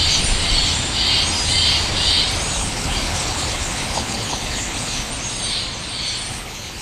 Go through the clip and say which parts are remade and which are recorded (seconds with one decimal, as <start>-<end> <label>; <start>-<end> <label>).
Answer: 0.0-2.6 recorded; 2.6-5.1 remade; 5.1-6.3 recorded; 6.3-6.8 remade